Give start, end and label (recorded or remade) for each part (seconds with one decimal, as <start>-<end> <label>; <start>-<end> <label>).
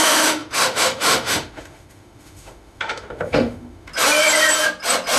0.0-3.9 remade; 3.9-5.2 recorded